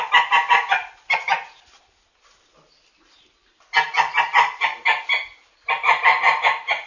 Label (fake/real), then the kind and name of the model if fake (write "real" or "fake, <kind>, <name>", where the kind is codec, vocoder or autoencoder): real